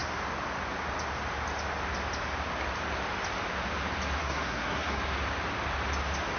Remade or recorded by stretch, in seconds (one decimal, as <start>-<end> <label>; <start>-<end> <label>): 0.0-4.2 recorded; 4.2-5.0 remade; 5.0-6.4 recorded